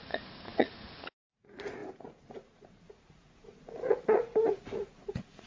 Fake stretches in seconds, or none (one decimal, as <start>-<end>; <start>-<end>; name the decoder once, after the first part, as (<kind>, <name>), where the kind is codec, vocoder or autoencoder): 0.0-5.5 (vocoder, Vocos)